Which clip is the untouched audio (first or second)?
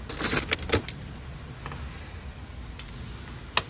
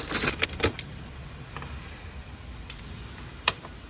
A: first